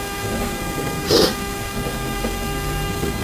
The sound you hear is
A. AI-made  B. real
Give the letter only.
A